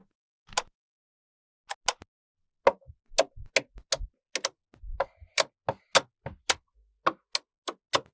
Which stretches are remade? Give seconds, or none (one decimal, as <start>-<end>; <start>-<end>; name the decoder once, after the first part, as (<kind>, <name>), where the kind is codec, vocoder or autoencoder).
none